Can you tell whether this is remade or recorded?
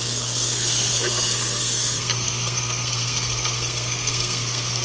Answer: remade